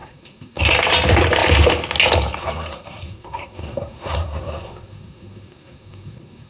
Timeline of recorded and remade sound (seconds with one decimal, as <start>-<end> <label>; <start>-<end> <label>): 0.0-0.7 remade; 0.7-2.4 recorded; 2.4-6.5 remade